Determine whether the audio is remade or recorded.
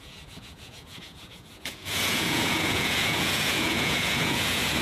remade